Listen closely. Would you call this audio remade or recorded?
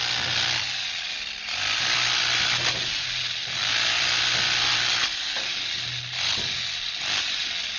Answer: recorded